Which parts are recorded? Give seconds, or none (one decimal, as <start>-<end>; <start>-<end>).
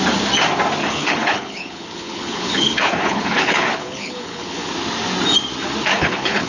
0.0-0.8; 4.7-5.9